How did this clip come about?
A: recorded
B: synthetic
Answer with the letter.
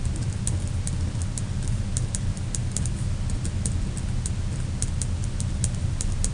A